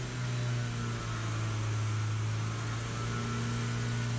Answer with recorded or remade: recorded